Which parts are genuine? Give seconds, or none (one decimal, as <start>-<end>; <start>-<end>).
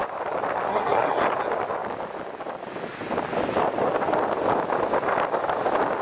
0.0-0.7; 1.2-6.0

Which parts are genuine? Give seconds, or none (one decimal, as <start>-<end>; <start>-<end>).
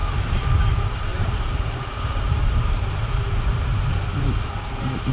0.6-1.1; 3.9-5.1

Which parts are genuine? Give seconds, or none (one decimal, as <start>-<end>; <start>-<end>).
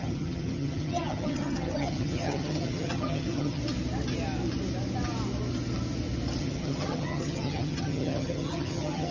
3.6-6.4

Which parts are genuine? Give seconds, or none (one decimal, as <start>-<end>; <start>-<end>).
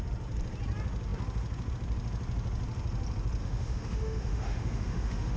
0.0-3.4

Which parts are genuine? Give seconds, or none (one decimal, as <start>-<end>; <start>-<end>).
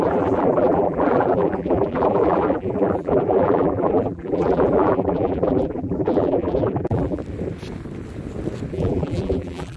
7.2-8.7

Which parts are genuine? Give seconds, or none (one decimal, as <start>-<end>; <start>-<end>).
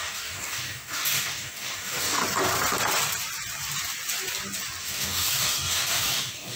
2.2-4.8